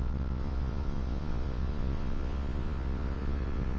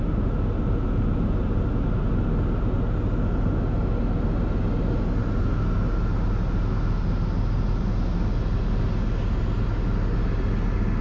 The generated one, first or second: first